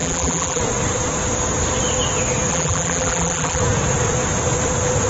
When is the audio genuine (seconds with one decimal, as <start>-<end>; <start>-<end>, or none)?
0.6-2.5; 3.6-5.1